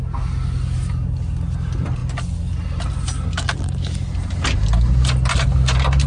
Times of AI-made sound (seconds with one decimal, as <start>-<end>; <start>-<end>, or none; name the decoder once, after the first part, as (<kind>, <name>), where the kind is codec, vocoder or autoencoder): none